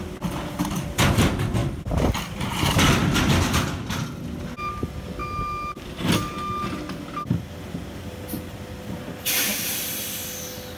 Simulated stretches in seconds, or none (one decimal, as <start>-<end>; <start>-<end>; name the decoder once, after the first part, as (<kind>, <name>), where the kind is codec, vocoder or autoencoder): none